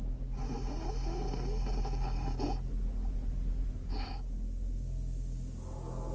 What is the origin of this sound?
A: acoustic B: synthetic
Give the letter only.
A